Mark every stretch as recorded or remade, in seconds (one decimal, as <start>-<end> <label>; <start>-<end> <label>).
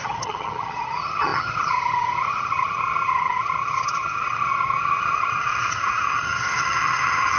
0.0-7.4 remade